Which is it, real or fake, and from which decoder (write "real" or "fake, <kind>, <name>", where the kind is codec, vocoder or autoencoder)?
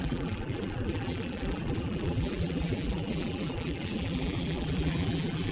fake, vocoder, BigVGAN v2